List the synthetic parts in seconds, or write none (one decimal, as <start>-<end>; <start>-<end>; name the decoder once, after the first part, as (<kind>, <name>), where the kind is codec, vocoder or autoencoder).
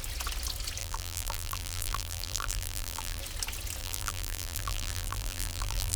0.8-3.2 (vocoder, BigVGAN v2); 3.8-6.0